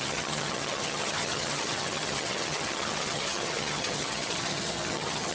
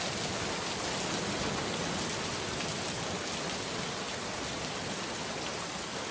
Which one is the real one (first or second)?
second